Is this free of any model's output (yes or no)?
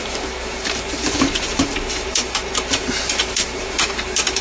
no